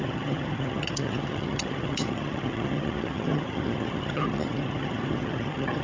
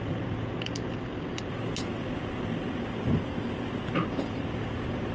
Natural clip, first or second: second